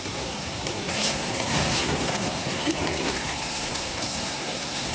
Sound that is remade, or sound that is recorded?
remade